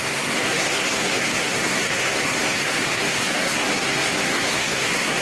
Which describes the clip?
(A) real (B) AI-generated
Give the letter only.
B